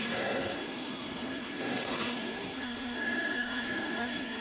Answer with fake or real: fake